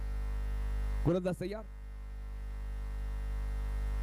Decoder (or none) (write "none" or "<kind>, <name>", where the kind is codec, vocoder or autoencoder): none